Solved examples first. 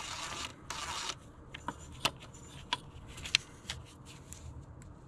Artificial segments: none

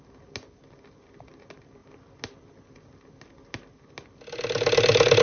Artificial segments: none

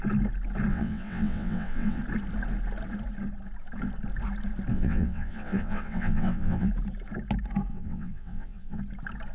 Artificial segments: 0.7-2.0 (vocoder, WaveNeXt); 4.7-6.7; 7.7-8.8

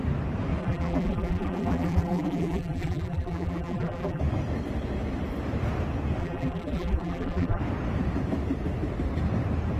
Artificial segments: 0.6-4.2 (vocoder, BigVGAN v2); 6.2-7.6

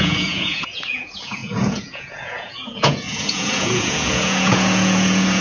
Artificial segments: 0.0-5.4 (vocoder, Vocos)